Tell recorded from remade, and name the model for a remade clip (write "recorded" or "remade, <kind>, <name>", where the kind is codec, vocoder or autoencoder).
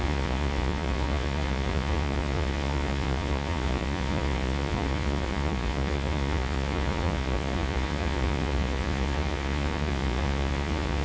remade, vocoder, Vocos